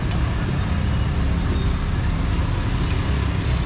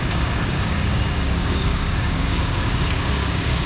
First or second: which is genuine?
first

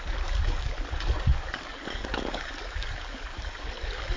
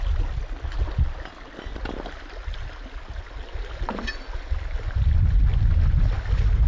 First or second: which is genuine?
second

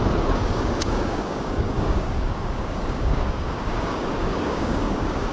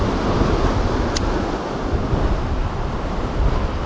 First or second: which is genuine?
second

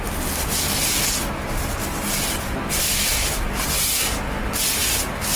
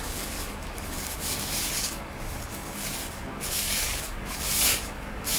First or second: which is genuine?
first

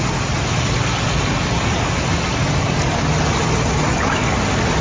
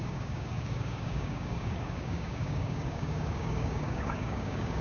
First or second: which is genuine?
first